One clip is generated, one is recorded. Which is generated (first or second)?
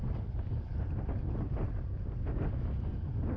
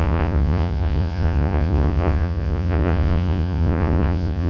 second